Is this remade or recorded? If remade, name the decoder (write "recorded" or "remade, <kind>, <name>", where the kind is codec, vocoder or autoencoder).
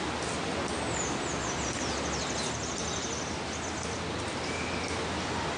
recorded